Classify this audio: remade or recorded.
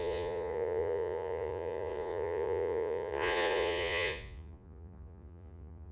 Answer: remade